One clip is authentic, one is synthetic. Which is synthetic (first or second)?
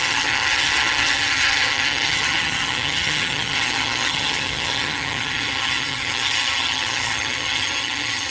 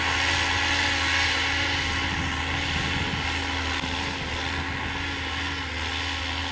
first